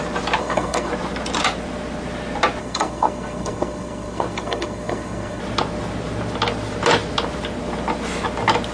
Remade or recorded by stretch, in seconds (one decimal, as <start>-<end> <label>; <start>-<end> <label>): 0.0-0.4 recorded; 0.4-0.9 remade; 0.9-2.6 recorded; 2.6-5.4 remade; 5.4-8.7 recorded